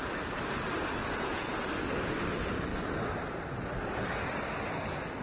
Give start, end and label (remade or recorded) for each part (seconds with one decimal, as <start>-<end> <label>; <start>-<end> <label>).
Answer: 0.0-1.0 recorded; 1.0-1.6 remade; 1.6-5.2 recorded